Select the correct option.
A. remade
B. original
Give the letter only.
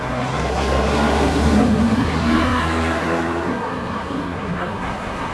A